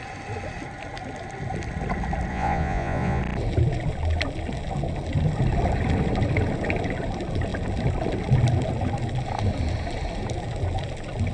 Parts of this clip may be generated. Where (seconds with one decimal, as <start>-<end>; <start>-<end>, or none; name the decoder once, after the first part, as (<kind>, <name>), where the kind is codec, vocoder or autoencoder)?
2.3-3.2 (vocoder, Vocos)

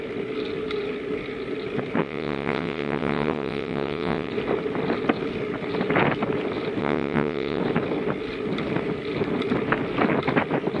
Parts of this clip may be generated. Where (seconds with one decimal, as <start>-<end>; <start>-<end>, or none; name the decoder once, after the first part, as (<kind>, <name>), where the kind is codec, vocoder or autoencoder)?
2.0-4.3 (vocoder, WaveNeXt); 6.8-7.6

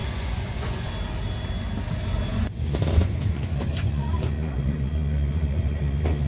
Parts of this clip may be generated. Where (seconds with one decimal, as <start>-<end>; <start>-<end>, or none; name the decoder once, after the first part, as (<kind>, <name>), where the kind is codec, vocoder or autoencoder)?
0.0-0.9 (vocoder, Vocos); 2.3-6.3

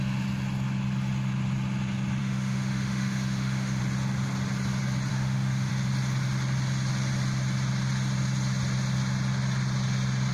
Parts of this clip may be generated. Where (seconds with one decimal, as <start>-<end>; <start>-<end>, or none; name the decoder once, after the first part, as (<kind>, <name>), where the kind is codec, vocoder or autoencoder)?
2.2-3.8 (autoencoder, DAC-VAE); 5.1-5.7

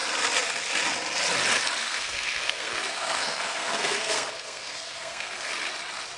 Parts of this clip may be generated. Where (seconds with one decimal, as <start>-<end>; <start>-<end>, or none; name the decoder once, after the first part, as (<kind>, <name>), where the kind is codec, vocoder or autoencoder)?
1.8-5.5 (codec, SNAC)

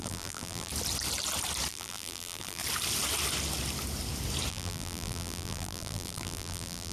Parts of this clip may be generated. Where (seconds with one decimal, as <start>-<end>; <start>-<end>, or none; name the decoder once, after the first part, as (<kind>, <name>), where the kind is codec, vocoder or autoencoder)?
0.0-0.7 (vocoder, BigVGAN v2); 1.7-2.6; 4.5-6.9

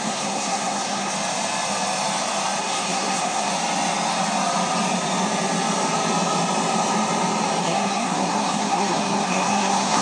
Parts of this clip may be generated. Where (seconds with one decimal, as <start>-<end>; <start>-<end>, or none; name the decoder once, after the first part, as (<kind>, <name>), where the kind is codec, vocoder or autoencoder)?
0.0-1.1 (codec, SNAC); 2.6-3.5; 7.6-10.0

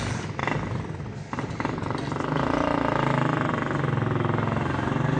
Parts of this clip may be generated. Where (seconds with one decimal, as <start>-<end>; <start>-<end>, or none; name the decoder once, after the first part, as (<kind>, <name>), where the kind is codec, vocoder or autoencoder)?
none